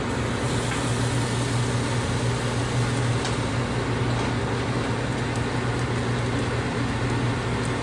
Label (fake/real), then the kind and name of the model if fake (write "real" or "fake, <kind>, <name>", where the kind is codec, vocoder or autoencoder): real